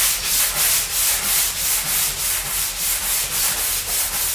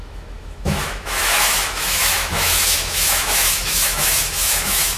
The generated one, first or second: second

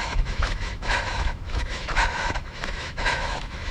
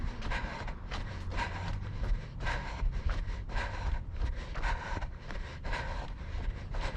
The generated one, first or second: first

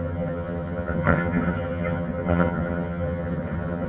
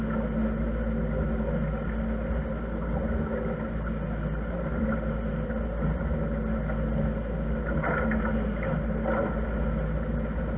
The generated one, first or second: first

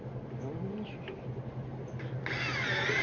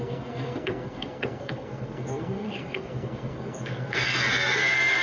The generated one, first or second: second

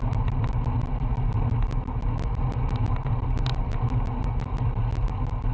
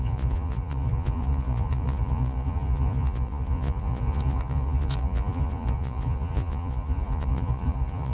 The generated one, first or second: second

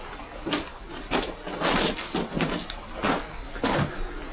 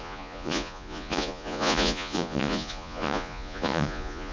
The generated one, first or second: second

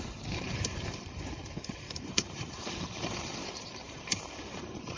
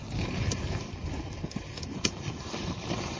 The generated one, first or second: first